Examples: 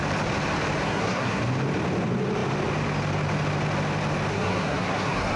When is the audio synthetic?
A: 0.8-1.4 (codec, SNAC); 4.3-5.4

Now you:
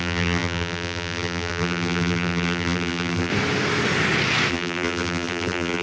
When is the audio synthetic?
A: 0.0-3.3 (vocoder, BigVGAN v2); 4.5-5.8

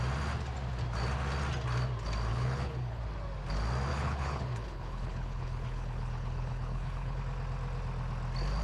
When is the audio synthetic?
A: 2.3-3.0 (codec, HILCodec); 3.9-7.2

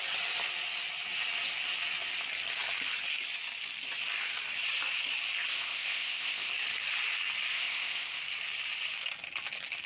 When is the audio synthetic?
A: 5.5-6.5 (codec, ZipCodec); 7.5-8.2